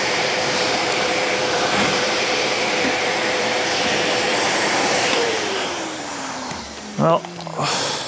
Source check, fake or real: fake